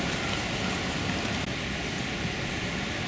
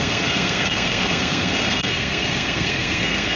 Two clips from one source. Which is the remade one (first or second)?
second